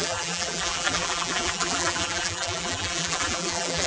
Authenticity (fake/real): fake